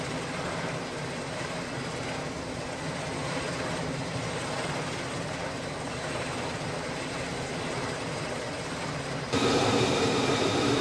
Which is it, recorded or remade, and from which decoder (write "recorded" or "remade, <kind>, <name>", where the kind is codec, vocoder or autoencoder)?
remade, vocoder, BigVGAN v2